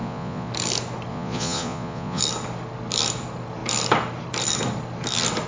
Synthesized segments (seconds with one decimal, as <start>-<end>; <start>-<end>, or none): 0.0-0.5; 1.1-2.2